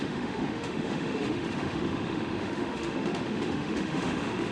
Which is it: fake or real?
fake